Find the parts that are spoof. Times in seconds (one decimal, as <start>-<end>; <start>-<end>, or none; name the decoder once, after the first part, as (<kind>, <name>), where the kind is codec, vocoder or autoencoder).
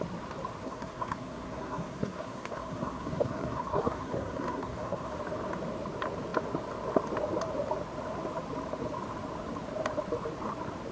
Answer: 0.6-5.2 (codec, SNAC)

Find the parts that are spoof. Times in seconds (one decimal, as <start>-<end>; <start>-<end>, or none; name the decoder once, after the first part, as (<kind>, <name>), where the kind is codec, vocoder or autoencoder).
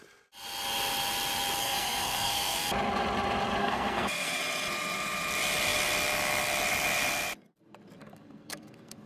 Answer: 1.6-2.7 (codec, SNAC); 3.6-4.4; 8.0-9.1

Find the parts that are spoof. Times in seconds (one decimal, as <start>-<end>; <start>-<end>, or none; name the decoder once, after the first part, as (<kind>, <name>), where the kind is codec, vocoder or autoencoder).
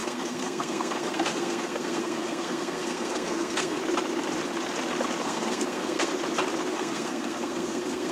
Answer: 0.0-3.8 (codec, SNAC); 5.2-6.1; 6.7-8.1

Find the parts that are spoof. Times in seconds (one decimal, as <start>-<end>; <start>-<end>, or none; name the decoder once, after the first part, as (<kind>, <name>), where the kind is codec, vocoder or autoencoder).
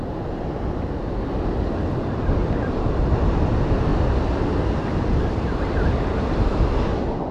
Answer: none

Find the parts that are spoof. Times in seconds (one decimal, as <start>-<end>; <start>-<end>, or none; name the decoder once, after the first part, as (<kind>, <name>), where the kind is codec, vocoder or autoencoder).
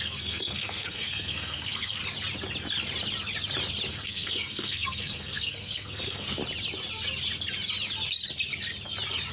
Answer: 0.0-2.0 (codec, SNAC); 3.9-6.4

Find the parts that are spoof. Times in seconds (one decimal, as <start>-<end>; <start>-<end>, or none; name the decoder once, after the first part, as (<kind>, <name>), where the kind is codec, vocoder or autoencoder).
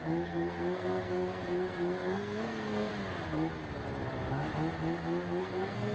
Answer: 0.0-2.9 (codec, SNAC); 5.4-5.9